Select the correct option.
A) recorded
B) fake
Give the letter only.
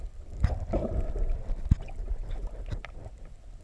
B